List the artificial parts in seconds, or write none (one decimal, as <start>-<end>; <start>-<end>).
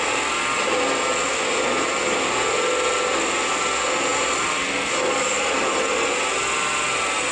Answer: none